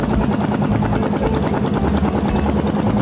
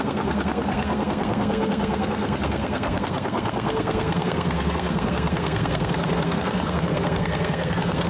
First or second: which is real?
first